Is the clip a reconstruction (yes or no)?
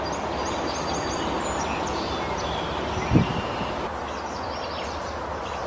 no